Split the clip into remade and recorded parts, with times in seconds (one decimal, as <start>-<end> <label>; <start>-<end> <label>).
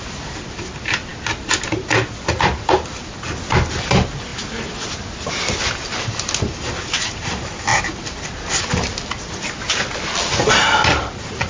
0.0-11.5 recorded